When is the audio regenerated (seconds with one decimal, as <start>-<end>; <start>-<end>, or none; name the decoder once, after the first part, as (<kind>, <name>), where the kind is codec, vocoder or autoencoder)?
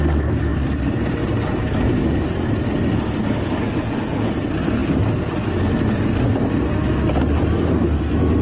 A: none